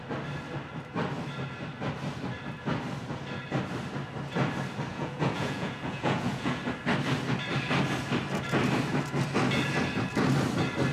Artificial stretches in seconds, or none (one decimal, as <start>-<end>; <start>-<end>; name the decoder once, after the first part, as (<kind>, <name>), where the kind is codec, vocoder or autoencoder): 4.9-6.6 (vocoder, Vocos)